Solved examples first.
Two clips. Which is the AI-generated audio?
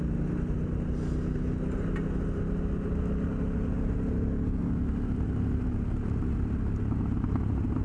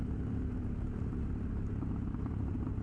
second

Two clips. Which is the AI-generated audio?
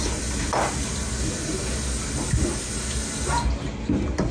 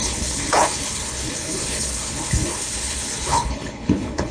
second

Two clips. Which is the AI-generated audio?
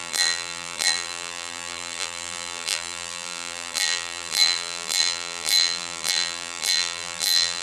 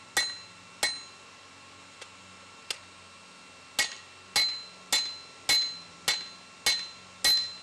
first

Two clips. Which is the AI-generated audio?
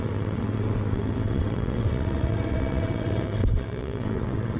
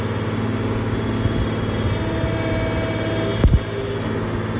first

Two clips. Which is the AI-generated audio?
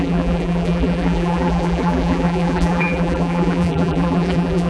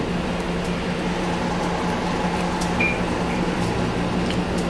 first